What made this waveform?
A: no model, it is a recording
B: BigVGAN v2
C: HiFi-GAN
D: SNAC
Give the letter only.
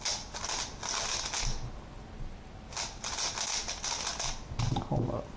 A